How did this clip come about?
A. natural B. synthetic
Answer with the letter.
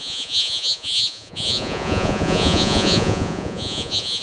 B